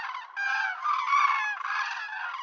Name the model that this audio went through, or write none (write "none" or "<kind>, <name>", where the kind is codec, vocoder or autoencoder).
none